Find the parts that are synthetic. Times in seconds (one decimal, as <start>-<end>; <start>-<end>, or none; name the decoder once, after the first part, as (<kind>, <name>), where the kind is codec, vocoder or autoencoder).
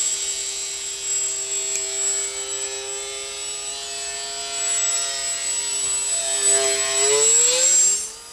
none